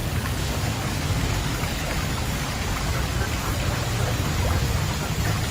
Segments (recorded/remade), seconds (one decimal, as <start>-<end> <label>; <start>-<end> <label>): 0.0-3.3 remade; 3.3-5.5 recorded